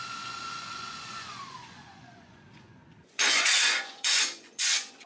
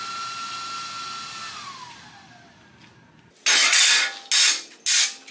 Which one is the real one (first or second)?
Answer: second